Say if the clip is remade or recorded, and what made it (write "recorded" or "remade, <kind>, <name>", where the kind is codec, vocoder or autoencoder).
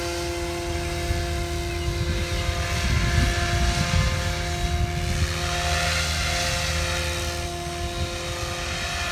recorded